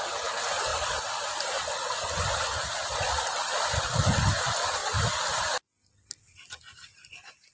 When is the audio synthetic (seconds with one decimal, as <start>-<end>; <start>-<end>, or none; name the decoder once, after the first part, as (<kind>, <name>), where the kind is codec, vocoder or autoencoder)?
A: none